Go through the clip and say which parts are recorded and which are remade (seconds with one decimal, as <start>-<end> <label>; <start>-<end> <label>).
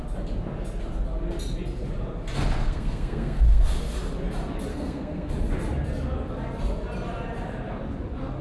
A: 0.0-2.6 recorded; 2.6-3.7 remade; 3.7-4.7 recorded; 4.7-5.3 remade; 5.3-8.4 recorded